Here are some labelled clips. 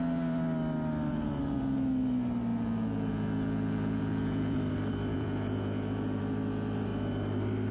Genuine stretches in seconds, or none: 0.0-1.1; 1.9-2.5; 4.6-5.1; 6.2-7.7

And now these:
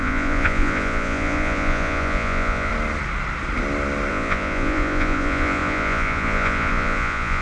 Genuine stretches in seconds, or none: 2.7-4.1

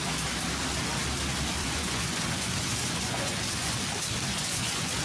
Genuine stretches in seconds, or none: 0.0-1.6; 3.8-4.3

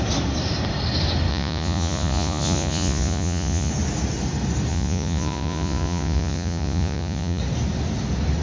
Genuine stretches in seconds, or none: 0.0-1.3; 3.7-4.7; 7.4-8.4

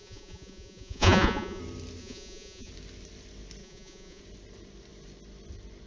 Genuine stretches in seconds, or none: 1.6-2.0; 2.7-3.6; 4.2-5.9